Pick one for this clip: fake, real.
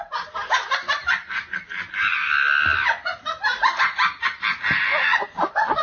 real